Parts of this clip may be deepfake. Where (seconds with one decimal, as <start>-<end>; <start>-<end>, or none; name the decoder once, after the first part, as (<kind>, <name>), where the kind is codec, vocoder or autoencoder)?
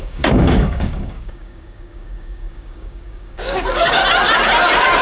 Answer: 0.0-4.0 (codec, DAC)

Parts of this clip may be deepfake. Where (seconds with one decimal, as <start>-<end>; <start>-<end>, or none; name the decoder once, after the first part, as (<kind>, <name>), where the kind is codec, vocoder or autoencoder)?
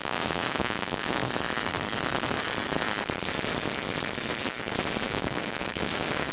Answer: 0.0-1.2 (codec, DAC); 5.0-6.3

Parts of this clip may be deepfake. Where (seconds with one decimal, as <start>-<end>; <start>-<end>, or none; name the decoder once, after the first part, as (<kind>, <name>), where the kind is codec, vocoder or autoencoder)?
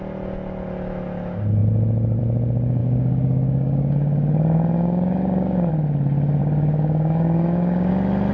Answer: 2.8-5.7 (codec, DAC); 6.4-7.9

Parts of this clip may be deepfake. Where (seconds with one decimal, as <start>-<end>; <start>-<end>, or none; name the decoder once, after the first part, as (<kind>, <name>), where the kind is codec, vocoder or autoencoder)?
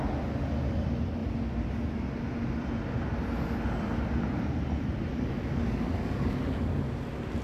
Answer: 5.1-7.0 (codec, DAC)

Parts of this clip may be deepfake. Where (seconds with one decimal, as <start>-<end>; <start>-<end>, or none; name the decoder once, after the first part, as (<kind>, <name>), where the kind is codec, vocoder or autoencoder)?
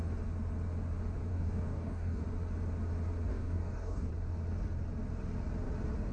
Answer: 1.3-2.2 (codec, DAC); 3.3-4.1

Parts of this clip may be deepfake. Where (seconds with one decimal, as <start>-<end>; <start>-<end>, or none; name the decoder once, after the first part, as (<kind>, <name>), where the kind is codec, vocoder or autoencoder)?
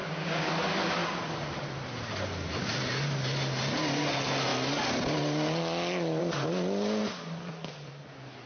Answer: 0.0-0.5 (codec, DAC)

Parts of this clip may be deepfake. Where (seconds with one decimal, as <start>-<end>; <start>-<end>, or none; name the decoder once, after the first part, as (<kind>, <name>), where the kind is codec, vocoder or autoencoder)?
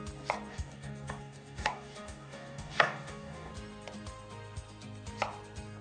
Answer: 0.5-3.5 (codec, DAC)